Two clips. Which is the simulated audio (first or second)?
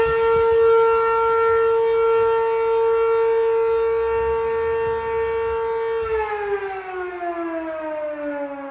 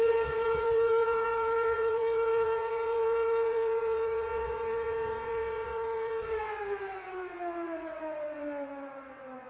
second